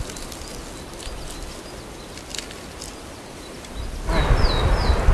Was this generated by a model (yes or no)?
no